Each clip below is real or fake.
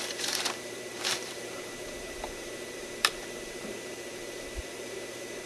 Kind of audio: fake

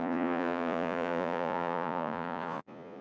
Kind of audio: fake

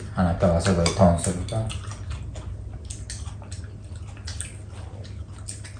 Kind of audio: real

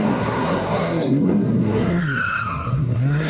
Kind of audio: fake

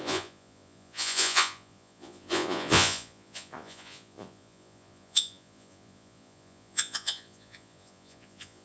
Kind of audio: fake